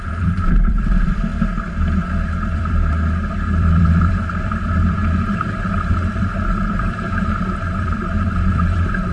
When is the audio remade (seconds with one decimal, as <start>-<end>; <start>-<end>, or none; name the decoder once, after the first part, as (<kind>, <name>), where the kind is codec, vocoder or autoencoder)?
0.0-1.3 (vocoder, BigVGAN v2); 2.5-5.0; 5.9-9.1